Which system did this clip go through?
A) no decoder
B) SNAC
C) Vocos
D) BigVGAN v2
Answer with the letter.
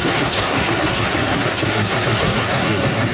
B